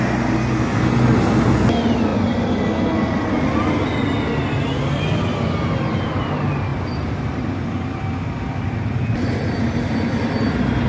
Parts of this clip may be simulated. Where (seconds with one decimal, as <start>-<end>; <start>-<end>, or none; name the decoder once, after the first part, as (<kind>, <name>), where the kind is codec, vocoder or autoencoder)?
none